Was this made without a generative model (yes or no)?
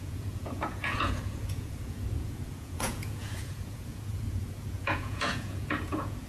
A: no